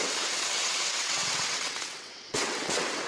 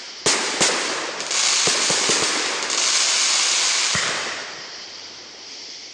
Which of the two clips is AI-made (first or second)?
first